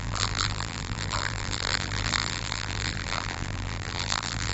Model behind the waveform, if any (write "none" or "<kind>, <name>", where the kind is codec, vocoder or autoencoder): vocoder, BigVGAN v2